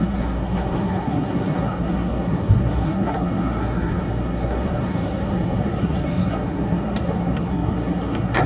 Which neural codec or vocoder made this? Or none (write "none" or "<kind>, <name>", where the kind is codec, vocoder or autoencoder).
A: codec, SNAC